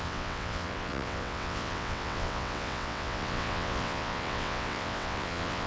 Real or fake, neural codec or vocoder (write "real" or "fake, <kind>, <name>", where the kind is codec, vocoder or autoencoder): fake, vocoder, WaveNeXt